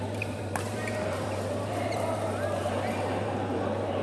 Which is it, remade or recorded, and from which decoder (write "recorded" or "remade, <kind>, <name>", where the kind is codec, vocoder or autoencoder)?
remade, vocoder, BigVGAN v2